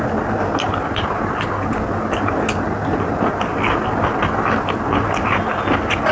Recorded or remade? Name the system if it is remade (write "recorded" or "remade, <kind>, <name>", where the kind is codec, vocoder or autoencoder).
recorded